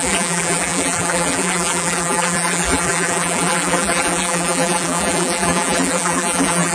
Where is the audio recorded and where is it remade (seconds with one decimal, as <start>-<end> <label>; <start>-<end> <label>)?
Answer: 0.0-6.7 remade